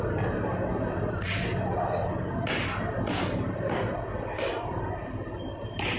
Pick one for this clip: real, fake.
real